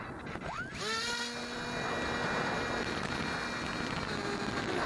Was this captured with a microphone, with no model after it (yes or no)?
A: yes